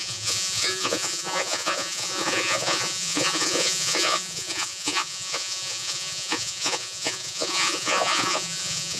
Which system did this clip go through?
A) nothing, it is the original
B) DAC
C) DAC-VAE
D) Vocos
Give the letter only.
D